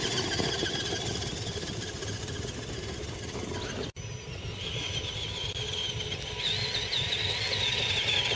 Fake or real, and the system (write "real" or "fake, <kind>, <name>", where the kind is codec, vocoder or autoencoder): real